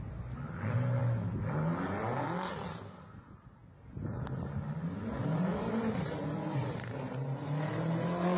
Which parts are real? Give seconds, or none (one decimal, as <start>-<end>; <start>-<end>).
0.0-8.4

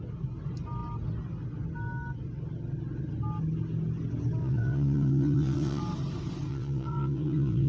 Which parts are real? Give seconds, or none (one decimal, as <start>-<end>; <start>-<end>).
0.0-4.4; 5.8-6.5